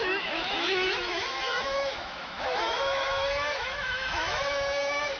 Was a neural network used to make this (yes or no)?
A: yes